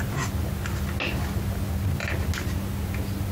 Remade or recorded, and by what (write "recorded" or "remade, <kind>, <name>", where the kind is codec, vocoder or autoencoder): recorded